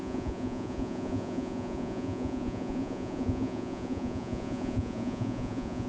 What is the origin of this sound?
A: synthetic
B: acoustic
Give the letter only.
A